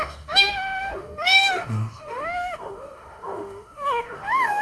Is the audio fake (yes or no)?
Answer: yes